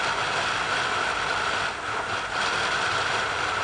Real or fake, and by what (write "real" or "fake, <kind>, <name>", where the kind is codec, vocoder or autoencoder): real